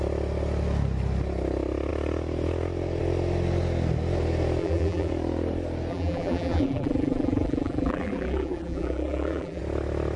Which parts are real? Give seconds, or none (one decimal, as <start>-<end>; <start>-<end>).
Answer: 0.0-4.6; 5.1-5.9; 9.6-10.2